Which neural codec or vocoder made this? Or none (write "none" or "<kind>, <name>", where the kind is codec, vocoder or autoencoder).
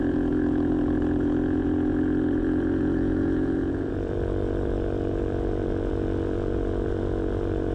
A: vocoder, Vocos